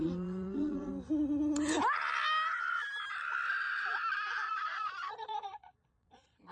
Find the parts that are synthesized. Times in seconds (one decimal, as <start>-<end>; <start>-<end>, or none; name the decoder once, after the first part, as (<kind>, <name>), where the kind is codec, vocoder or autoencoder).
0.0-0.9 (vocoder, Vocos); 4.5-6.5